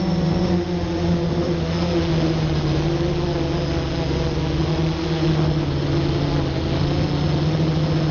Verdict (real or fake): real